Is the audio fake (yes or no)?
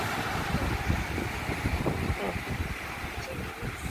no